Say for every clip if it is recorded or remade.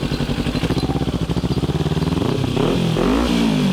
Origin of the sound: recorded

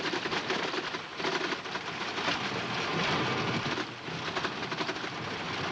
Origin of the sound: recorded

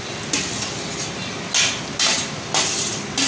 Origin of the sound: recorded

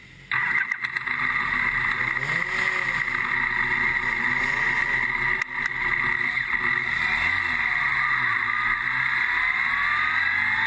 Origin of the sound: recorded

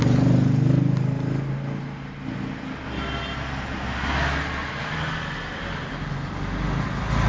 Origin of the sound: recorded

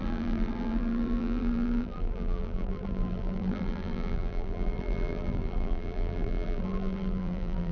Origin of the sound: remade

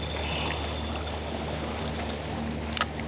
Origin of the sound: recorded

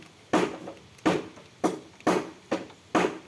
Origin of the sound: recorded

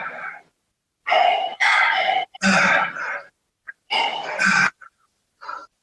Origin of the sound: recorded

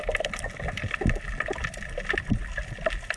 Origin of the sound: recorded